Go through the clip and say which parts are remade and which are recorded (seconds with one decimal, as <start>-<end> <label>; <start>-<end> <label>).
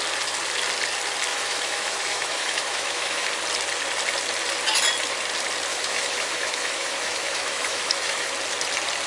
0.0-1.3 recorded; 1.3-3.3 remade; 3.3-5.7 recorded; 5.7-8.3 remade; 8.3-9.1 recorded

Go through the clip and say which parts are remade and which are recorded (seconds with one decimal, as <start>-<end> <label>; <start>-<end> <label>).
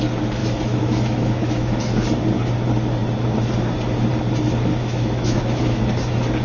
0.0-0.4 recorded; 0.4-1.8 remade; 1.8-4.7 recorded; 4.7-5.8 remade; 5.8-6.4 recorded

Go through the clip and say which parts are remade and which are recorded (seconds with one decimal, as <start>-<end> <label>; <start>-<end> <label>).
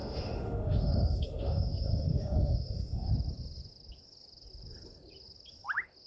0.0-3.1 remade; 3.1-6.1 recorded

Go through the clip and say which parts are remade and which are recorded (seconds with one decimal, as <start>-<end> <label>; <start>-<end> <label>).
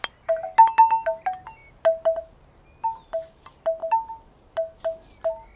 0.0-5.6 recorded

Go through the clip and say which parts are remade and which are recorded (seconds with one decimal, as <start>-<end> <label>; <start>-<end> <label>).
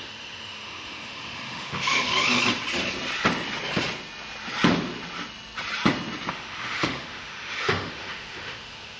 0.0-2.1 remade; 2.1-6.3 recorded; 6.3-9.0 remade